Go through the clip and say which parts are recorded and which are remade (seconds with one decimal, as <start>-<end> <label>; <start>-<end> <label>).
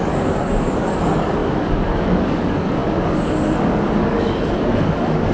0.0-5.3 remade